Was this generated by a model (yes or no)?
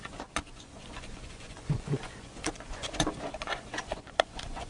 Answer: yes